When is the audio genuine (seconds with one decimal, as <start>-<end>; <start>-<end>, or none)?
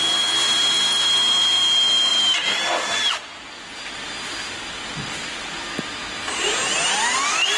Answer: 0.0-7.6